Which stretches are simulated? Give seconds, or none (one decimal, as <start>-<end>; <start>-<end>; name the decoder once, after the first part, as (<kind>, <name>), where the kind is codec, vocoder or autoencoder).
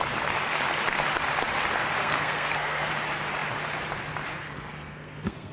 2.0-2.9 (codec, SNAC); 4.4-5.5